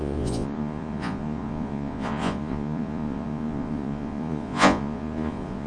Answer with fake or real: fake